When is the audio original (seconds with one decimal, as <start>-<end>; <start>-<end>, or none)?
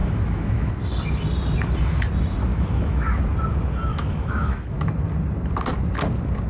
0.7-2.5; 3.2-3.9; 4.9-6.5